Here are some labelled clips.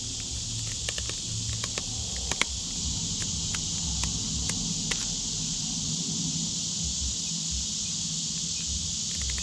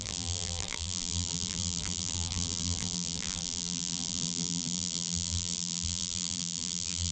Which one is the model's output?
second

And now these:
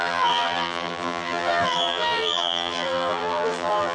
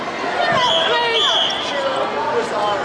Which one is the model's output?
first